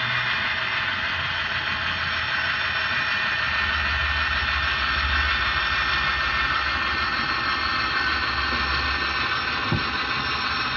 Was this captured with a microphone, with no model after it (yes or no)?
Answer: yes